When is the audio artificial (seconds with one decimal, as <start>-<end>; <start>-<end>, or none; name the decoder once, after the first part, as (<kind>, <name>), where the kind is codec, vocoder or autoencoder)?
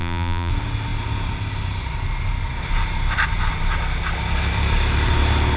0.0-0.5 (vocoder, BigVGAN v2)